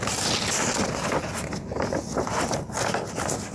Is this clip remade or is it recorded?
recorded